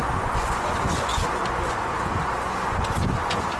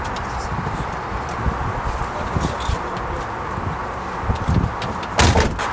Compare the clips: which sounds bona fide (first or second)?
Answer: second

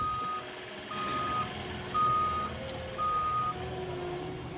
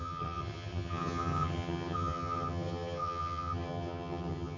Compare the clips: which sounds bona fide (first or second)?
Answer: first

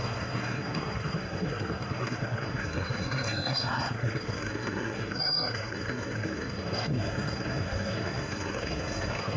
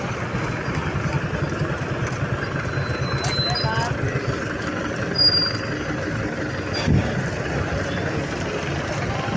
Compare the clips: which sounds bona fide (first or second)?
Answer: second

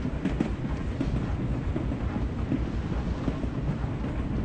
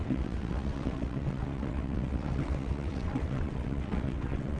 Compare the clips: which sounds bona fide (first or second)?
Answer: first